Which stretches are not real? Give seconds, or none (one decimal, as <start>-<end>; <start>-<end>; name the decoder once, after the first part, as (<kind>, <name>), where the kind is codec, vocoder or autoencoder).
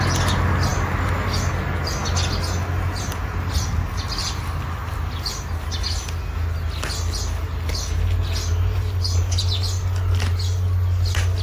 none